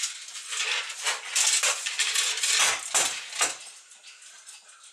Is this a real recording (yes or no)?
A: yes